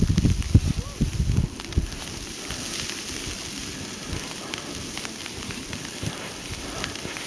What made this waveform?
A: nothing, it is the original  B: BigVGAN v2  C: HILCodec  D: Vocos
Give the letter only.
A